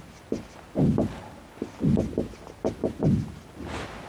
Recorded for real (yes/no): yes